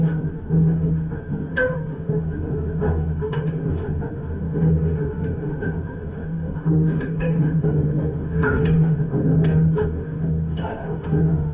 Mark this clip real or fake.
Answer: fake